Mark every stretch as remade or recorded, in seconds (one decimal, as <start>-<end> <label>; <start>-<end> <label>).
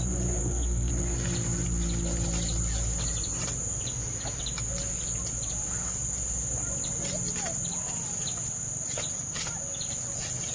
0.0-0.4 recorded; 0.4-0.9 remade; 0.9-10.5 recorded